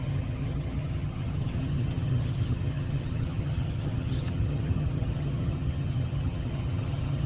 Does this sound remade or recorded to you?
remade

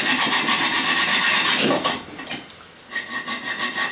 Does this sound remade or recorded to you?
recorded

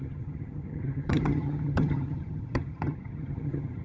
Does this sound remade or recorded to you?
remade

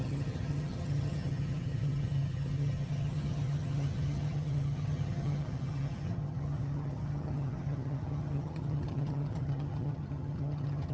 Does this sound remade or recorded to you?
remade